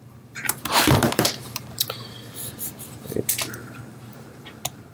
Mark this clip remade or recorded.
remade